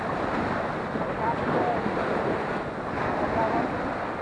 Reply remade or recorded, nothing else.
recorded